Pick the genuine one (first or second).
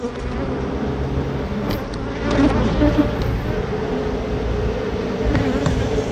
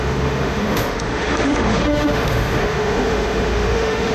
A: first